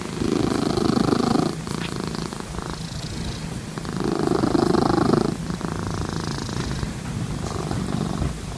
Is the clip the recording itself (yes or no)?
yes